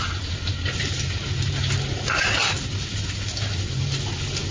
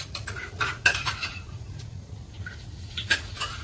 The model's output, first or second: second